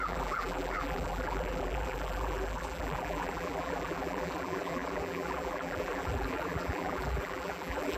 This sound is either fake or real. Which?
fake